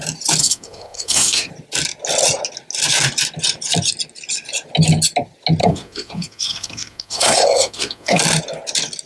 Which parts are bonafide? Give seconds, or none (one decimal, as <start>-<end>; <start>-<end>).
0.0-0.4; 1.5-5.6; 8.2-9.1